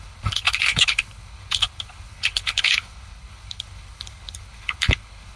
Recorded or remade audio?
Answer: remade